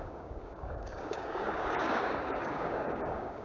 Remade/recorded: remade